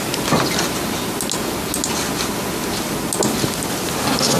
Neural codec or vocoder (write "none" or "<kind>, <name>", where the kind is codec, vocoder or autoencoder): none